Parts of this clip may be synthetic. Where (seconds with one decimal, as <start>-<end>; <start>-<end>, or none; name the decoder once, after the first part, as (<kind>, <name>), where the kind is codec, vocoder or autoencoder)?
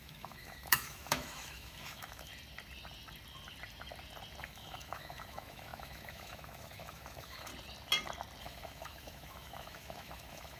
0.0-2.3 (autoencoder, DAC-VAE); 4.4-7.5; 8.4-10.6